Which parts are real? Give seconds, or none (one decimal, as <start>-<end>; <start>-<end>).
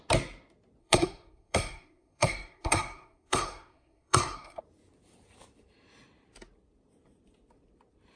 0.0-0.8; 4.6-8.2